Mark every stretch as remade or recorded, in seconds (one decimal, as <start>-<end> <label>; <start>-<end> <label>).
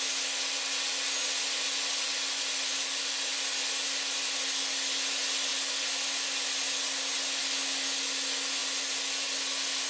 0.0-9.9 recorded